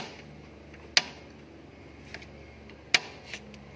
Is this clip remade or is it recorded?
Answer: recorded